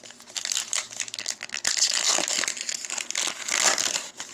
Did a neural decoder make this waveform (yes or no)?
no